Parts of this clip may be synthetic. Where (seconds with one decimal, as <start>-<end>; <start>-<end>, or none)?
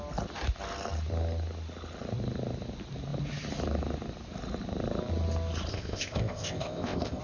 5.7-7.2